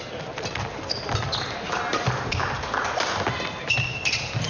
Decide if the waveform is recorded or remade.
recorded